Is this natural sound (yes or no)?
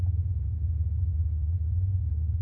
no